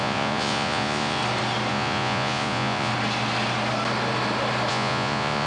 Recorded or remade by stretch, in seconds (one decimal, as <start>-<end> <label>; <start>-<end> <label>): 0.0-1.2 remade; 1.2-1.7 recorded; 1.7-2.9 remade; 2.9-4.7 recorded; 4.7-5.5 remade